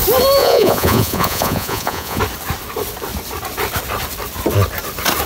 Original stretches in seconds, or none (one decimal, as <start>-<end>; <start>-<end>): 0.0-0.4; 2.2-5.3